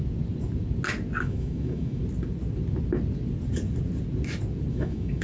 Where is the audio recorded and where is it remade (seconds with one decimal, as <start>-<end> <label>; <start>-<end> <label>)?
0.0-1.2 recorded; 1.2-2.0 remade; 2.0-4.7 recorded; 4.7-5.2 remade